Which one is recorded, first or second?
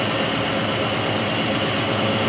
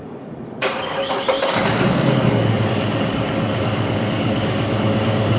first